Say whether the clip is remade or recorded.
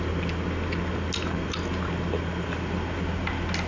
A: recorded